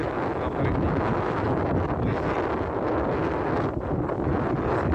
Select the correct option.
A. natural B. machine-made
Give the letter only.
A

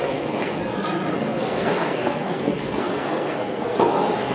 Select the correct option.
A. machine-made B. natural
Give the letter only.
A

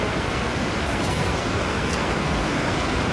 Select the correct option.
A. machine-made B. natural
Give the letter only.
A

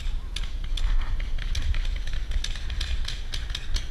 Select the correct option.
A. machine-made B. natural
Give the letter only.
B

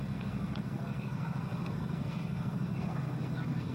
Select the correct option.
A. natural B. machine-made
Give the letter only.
B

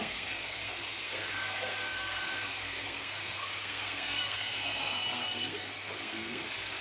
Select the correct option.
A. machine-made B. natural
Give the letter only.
A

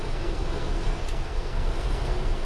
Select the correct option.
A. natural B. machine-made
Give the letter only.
B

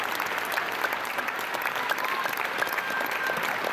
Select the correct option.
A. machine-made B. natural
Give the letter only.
B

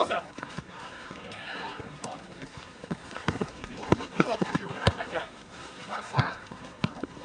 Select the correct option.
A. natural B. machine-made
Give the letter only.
B